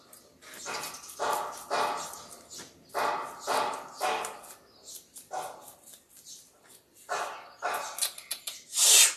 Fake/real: real